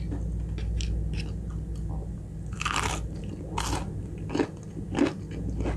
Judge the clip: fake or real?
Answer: real